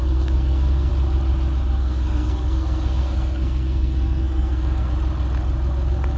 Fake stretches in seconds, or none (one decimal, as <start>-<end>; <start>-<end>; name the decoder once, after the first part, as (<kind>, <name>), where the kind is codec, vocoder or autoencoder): 0.0-0.9 (codec, SNAC); 1.8-4.9